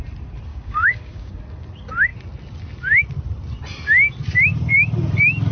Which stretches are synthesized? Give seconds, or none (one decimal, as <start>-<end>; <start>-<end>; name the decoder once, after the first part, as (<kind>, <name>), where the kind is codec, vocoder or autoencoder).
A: 0.5-1.4 (codec, DAC)